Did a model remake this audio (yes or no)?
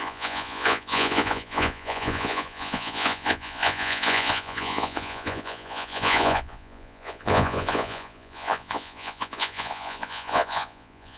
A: yes